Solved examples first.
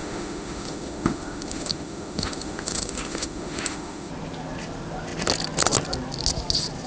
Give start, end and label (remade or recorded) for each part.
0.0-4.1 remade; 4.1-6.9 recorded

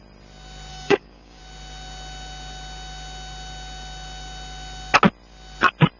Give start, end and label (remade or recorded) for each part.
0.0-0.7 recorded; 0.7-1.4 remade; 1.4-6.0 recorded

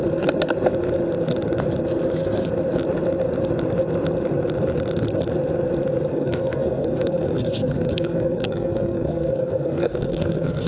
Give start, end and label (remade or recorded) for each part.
0.0-6.1 recorded; 6.1-10.7 remade

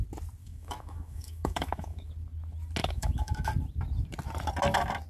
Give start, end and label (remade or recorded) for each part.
0.0-0.4 recorded; 0.4-2.1 remade; 2.1-2.8 recorded; 2.8-3.5 remade; 3.5-5.1 recorded

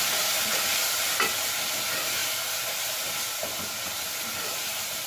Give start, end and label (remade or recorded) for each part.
0.0-5.1 recorded

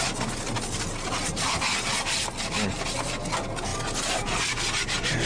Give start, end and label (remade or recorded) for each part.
0.0-5.3 recorded

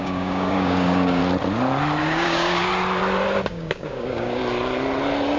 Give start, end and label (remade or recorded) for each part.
0.0-1.2 remade; 1.2-2.0 recorded; 2.0-2.7 remade; 2.7-3.5 recorded; 3.5-4.4 remade; 4.4-5.4 recorded

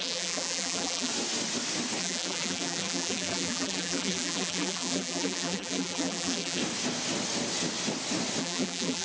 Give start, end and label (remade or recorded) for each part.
0.0-1.1 remade; 1.1-2.0 recorded; 2.0-6.6 remade; 6.6-8.4 recorded; 8.4-9.0 remade